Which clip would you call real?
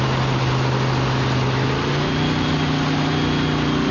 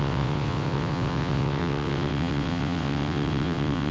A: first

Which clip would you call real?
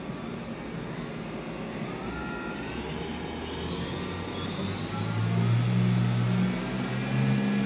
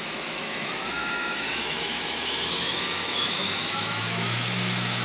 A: first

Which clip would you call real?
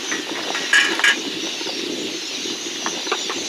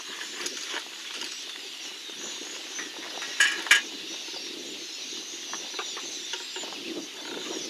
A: second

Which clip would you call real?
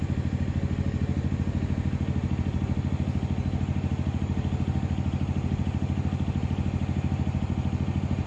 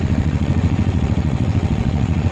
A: first